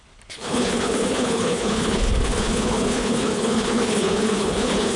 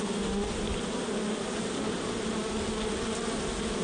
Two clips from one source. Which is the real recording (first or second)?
second